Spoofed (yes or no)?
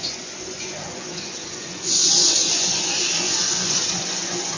yes